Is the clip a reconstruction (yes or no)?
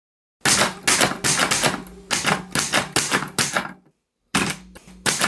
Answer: no